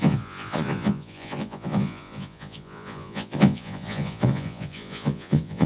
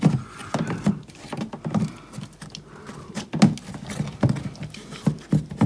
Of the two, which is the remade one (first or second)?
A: first